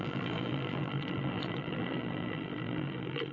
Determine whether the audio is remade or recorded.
remade